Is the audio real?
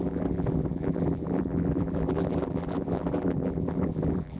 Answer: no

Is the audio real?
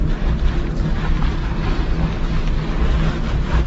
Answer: yes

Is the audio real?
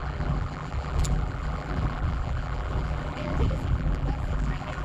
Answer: no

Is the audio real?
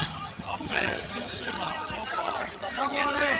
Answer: no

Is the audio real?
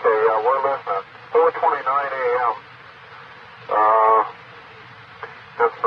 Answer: yes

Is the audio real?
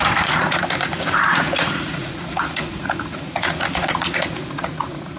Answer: no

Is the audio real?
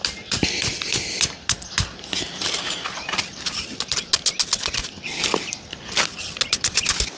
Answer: yes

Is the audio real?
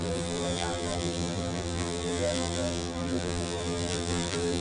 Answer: no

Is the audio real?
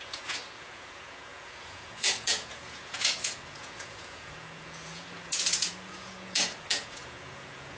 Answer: no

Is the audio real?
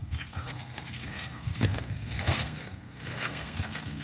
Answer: no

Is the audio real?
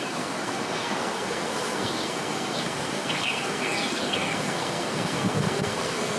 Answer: no